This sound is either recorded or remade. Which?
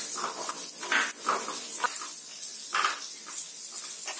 recorded